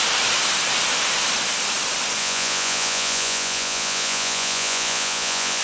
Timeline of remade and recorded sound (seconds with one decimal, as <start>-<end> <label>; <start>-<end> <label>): 0.0-2.2 recorded; 2.2-5.6 remade